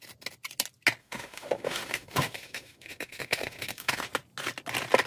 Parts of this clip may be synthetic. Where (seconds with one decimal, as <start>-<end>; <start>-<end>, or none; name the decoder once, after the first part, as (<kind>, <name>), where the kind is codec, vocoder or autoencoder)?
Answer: 1.0-4.1 (autoencoder, DAC-VAE)